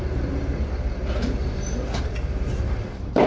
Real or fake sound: fake